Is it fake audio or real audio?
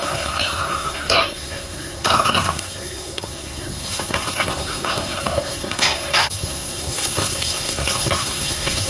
fake